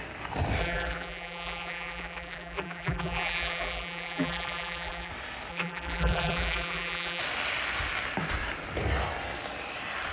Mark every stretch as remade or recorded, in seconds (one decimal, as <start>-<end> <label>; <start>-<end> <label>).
0.0-0.6 recorded; 0.6-5.1 remade; 5.1-5.5 recorded; 5.5-7.2 remade; 7.2-10.1 recorded